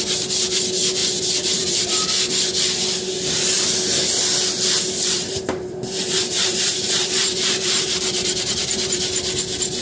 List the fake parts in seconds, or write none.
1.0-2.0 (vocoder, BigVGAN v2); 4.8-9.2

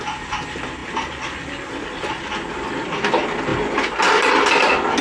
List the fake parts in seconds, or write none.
none

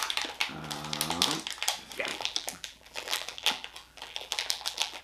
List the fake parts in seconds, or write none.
2.1-5.0 (vocoder, BigVGAN v2)

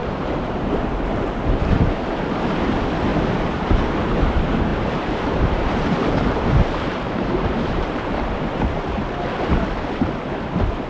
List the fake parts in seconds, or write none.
0.0-1.7 (vocoder, BigVGAN v2); 3.1-4.1; 4.7-9.1

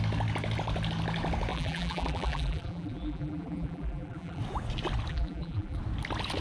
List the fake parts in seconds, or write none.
1.5-4.4 (vocoder, BigVGAN v2); 5.1-5.8

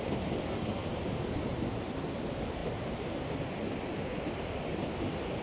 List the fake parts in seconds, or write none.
0.8-2.0 (vocoder, BigVGAN v2); 2.6-4.4

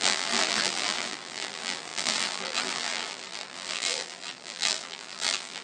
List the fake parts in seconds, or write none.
0.0-5.6 (vocoder, BigVGAN v2)